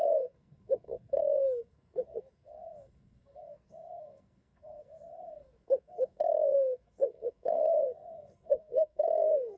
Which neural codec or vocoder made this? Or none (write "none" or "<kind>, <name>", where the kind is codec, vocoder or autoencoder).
codec, SNAC